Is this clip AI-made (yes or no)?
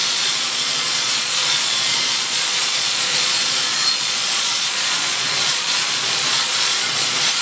yes